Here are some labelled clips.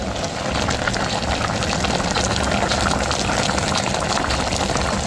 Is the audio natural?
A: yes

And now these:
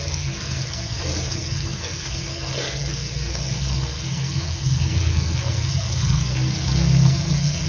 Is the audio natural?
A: no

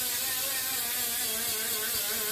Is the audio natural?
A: yes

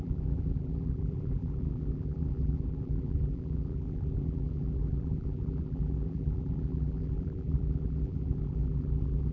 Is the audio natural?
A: no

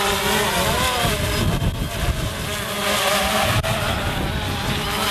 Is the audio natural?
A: yes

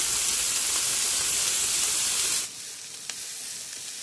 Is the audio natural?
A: yes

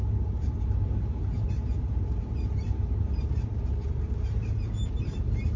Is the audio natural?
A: no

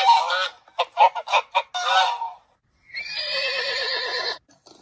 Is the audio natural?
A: yes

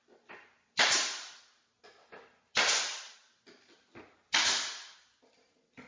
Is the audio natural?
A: yes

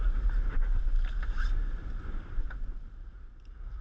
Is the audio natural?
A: yes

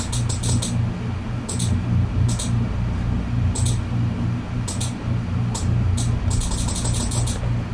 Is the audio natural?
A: yes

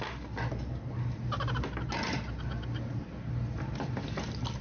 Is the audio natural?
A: yes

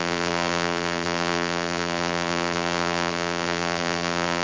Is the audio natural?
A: no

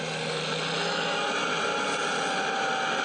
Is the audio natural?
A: yes